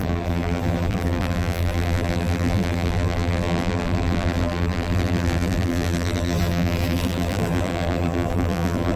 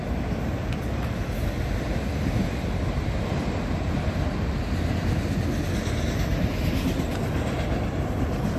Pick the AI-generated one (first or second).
first